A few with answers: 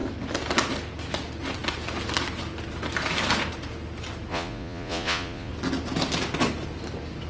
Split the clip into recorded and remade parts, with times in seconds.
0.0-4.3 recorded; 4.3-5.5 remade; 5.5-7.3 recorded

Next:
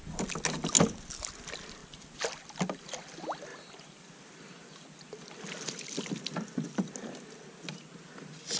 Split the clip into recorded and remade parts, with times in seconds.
0.0-1.8 recorded; 1.8-3.1 remade; 3.1-3.5 recorded; 3.5-6.2 remade; 6.2-8.6 recorded

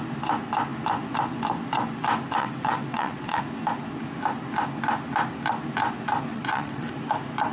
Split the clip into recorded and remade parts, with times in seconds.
0.0-2.4 recorded; 2.4-3.4 remade; 3.4-6.3 recorded; 6.3-6.9 remade; 6.9-7.5 recorded